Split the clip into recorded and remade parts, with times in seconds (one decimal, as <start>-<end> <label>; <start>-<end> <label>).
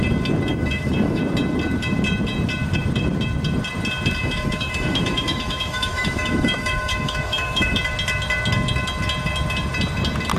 0.0-0.5 recorded; 0.5-1.2 remade; 1.2-4.2 recorded; 4.2-7.8 remade; 7.8-10.4 recorded